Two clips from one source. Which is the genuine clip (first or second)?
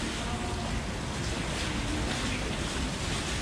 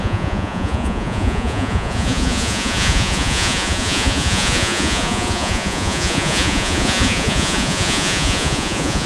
first